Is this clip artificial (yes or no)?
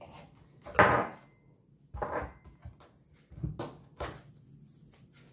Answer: no